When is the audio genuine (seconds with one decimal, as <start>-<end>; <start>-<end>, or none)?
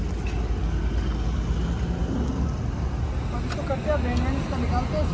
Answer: 0.0-5.1